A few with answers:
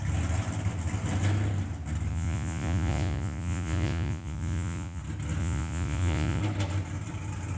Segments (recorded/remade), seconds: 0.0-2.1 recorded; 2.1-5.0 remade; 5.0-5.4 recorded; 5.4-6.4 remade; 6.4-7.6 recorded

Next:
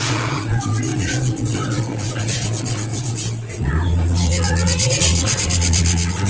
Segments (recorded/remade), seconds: 0.0-6.3 remade

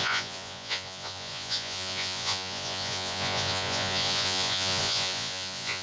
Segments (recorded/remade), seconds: 0.0-5.8 remade

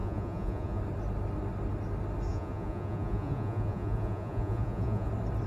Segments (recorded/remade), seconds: 0.0-0.8 remade; 0.8-2.3 recorded; 2.3-5.1 remade; 5.1-5.5 recorded

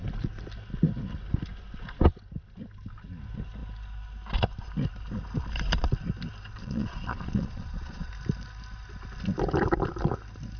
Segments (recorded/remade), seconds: 0.0-6.6 recorded; 6.6-8.1 remade; 8.1-10.6 recorded

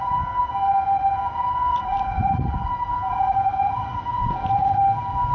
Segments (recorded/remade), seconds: 0.0-1.7 recorded; 1.7-2.7 remade; 2.7-3.1 recorded; 3.1-4.8 remade; 4.8-5.3 recorded

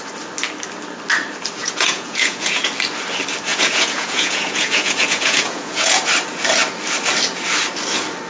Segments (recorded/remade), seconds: 0.0-1.6 recorded; 1.6-2.7 remade; 2.7-3.5 recorded; 3.5-6.0 remade; 6.0-8.3 recorded

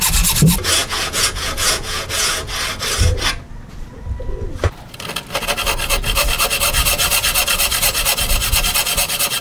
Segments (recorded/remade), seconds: 0.0-0.8 recorded; 0.8-2.5 remade; 2.5-9.4 recorded